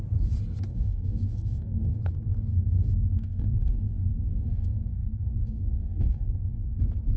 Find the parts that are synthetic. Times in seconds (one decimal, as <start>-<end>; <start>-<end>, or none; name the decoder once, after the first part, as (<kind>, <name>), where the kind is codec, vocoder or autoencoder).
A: 0.7-2.0 (codec, DAC); 2.5-6.8